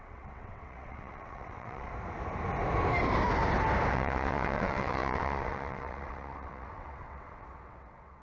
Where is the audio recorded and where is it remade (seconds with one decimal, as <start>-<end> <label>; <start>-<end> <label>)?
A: 0.0-1.9 remade; 1.9-3.9 recorded; 3.9-8.2 remade

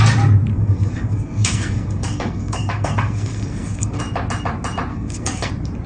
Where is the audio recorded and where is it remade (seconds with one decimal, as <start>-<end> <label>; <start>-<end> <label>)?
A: 0.0-0.5 recorded; 0.5-4.0 remade; 4.0-4.9 recorded; 4.9-5.5 remade; 5.5-5.9 recorded